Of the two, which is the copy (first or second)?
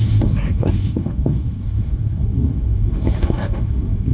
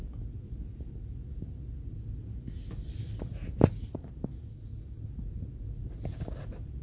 first